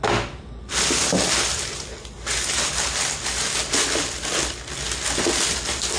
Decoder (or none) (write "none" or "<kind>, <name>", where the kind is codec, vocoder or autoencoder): none